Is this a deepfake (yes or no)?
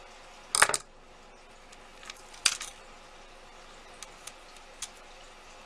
no